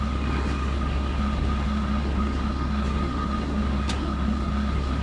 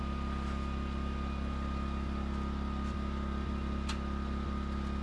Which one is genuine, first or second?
second